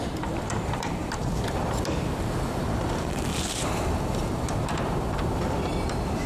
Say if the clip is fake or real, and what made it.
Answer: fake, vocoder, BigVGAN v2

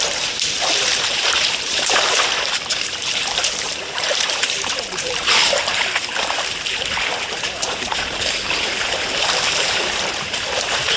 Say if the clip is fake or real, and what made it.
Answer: fake, vocoder, BigVGAN v2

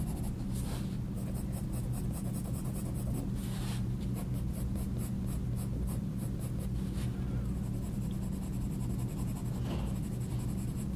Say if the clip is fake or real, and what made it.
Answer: real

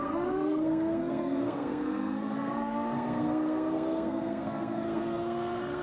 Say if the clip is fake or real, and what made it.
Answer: fake, codec, SNAC